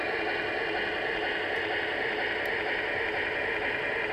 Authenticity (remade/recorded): recorded